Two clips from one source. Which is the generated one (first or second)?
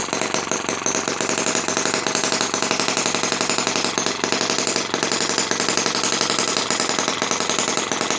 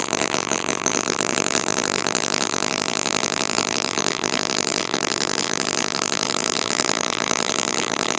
second